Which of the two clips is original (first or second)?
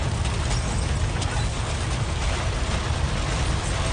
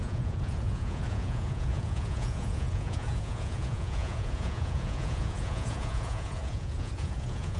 first